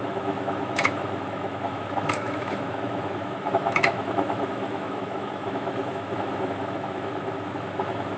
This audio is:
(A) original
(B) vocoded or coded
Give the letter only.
B